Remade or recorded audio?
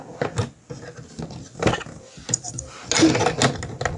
recorded